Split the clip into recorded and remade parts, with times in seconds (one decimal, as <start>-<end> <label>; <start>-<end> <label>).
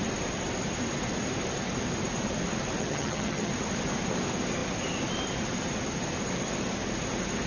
0.0-2.8 recorded; 2.8-3.5 remade; 3.5-7.5 recorded